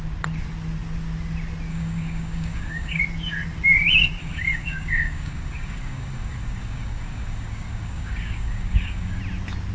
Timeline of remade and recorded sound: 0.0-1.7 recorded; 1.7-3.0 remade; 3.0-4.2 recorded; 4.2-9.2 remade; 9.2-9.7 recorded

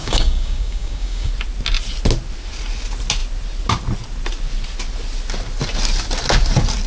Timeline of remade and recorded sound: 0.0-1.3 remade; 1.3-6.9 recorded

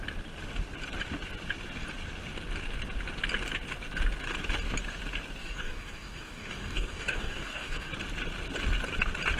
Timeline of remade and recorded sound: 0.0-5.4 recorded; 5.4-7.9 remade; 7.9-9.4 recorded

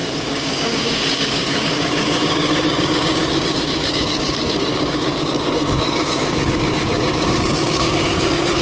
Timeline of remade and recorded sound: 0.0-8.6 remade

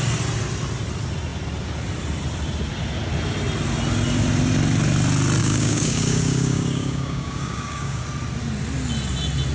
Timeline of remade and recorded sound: 0.0-5.4 recorded; 5.4-8.0 remade; 8.0-9.5 recorded

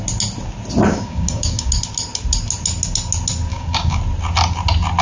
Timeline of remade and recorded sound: 0.0-0.9 recorded; 0.9-1.7 remade; 1.7-3.5 recorded; 3.5-4.0 remade; 4.0-5.0 recorded